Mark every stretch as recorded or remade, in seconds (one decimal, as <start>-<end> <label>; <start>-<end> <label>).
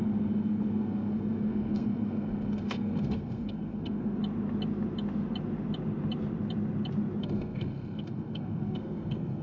0.0-4.2 remade; 4.2-7.2 recorded; 7.2-9.4 remade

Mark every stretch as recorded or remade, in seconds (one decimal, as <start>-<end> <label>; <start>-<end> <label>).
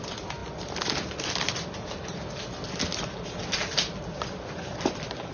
0.0-5.3 recorded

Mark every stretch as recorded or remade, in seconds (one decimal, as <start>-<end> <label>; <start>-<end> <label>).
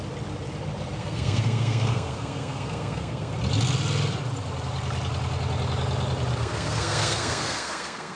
0.0-1.0 recorded; 1.0-3.3 remade; 3.3-6.4 recorded; 6.4-8.2 remade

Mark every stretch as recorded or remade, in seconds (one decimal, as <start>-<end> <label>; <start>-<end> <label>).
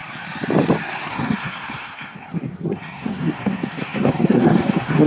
0.0-1.1 recorded; 1.1-5.1 remade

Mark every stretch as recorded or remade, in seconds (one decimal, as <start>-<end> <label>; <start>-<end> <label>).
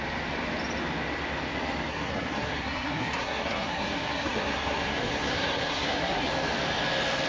0.0-1.9 recorded; 1.9-6.3 remade; 6.3-7.3 recorded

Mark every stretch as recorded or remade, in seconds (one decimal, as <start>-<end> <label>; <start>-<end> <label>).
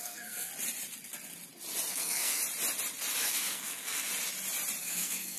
0.0-0.5 remade; 0.5-1.9 recorded; 1.9-2.4 remade; 2.4-3.2 recorded; 3.2-4.1 remade; 4.1-4.8 recorded; 4.8-5.4 remade